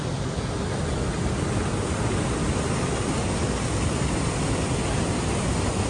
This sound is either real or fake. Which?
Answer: real